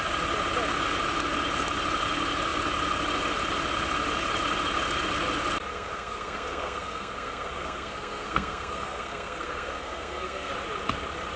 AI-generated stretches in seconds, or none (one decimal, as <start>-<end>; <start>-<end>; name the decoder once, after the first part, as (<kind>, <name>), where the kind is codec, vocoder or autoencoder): 5.7-10.5 (codec, SNAC)